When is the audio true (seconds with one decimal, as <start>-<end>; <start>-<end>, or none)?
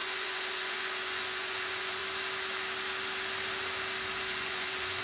2.0-4.3